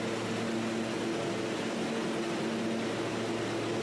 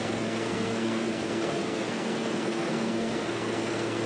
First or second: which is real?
first